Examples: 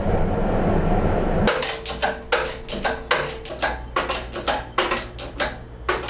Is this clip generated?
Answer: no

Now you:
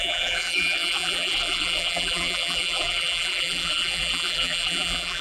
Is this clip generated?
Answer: yes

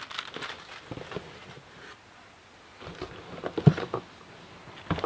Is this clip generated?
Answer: no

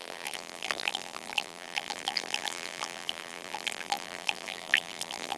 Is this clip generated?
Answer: yes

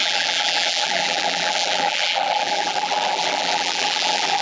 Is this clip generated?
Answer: yes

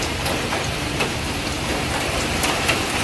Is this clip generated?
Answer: yes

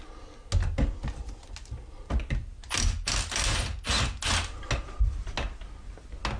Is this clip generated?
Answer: no